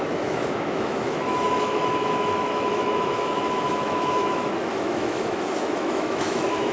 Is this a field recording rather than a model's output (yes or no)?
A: no